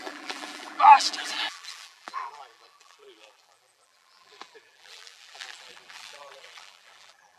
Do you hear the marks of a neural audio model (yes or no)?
yes